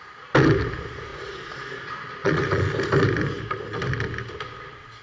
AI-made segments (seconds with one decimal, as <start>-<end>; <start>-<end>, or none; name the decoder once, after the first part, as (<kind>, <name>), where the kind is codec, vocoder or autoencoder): 1.1-1.8 (vocoder, Vocos); 2.2-2.7